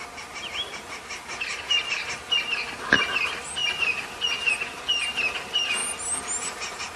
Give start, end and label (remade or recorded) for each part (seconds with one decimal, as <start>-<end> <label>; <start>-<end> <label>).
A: 0.0-7.0 recorded